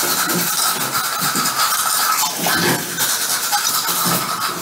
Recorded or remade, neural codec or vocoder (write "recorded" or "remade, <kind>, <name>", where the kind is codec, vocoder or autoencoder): recorded